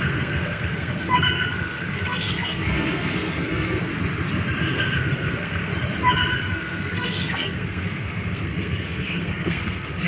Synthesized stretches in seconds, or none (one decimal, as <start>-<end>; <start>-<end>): 0.0-3.9; 4.7-5.7; 6.3-10.1